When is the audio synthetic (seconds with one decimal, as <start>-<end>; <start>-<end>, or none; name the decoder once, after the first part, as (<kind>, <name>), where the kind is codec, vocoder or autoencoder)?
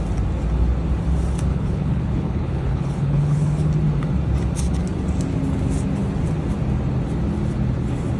1.5-3.7 (codec, HILCodec)